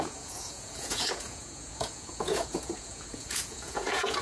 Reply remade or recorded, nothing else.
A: remade